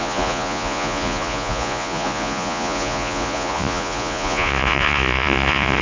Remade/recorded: remade